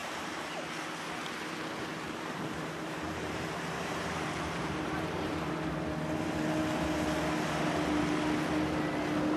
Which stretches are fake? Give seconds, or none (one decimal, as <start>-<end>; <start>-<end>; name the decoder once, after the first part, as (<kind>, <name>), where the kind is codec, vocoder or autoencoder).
0.0-0.7 (vocoder, BigVGAN v2); 1.9-5.5